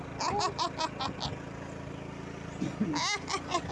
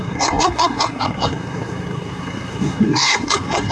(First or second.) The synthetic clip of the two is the second